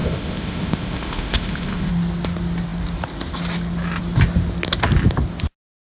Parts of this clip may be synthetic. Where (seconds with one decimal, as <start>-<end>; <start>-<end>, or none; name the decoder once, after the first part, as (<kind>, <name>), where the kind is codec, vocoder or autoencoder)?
0.0-1.9 (codec, ZipCodec)